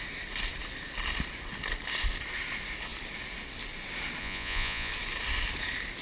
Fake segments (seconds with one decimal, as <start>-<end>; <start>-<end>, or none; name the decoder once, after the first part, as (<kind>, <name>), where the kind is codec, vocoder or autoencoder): 4.2-4.9 (vocoder, Vocos)